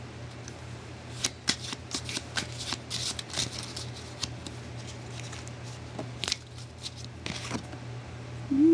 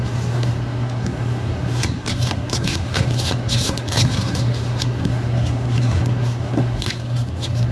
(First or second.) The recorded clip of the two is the first